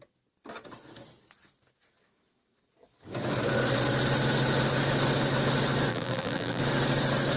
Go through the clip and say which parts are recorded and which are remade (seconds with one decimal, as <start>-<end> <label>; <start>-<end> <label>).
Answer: 0.0-5.9 recorded; 5.9-6.6 remade; 6.6-7.4 recorded